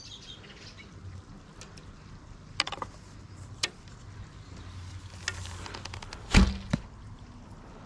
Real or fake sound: real